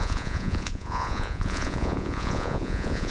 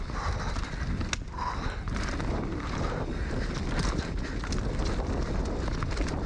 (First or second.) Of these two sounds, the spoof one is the first